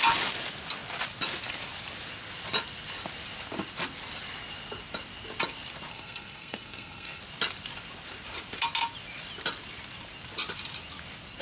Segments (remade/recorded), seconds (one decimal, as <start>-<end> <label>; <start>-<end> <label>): 0.0-5.9 recorded; 5.9-7.2 remade; 7.2-11.4 recorded